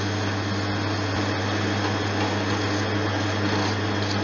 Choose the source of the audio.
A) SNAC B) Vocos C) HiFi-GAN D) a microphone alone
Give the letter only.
D